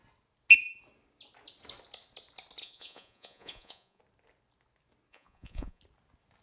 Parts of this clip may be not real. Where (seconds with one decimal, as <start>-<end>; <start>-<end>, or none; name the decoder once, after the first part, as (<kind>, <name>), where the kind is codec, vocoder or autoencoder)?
2.6-4.0 (vocoder, Vocos); 5.1-5.8